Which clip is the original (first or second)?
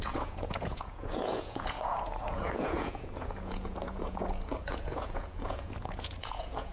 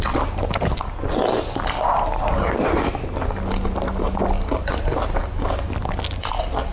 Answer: second